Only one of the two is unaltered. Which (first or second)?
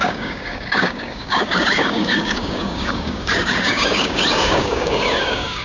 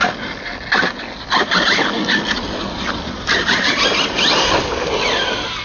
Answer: second